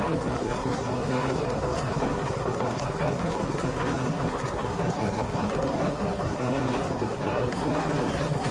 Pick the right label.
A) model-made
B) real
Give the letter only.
A